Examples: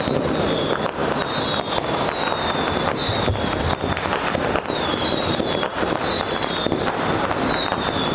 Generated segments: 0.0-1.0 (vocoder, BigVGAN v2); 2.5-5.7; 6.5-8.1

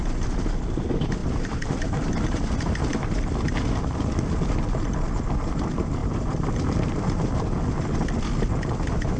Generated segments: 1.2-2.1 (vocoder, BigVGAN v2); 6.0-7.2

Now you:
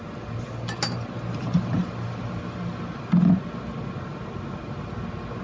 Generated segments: none

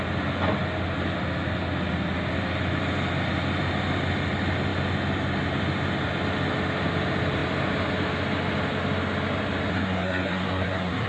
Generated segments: 9.7-11.1 (codec, SNAC)

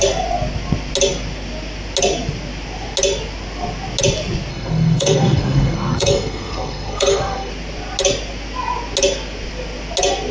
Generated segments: 4.5-7.5 (codec, SNAC)

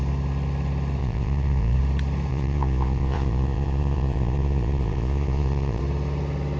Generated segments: 1.0-1.8 (vocoder, Vocos); 2.3-5.8

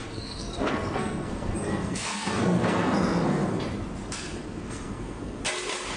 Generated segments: 0.0-3.6 (codec, SNAC); 4.0-5.4